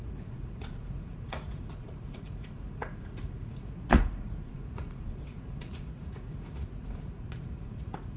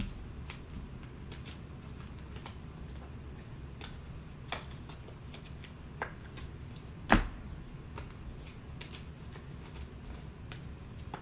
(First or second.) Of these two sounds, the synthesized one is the first